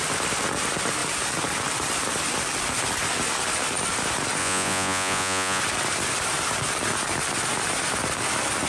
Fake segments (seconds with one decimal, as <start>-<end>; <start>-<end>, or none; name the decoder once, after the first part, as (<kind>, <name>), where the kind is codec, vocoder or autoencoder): 4.4-5.6 (vocoder, Vocos)